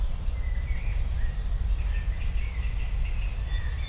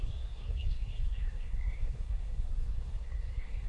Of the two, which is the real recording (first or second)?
first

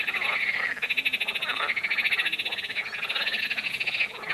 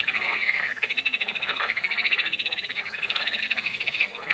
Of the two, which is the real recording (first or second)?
first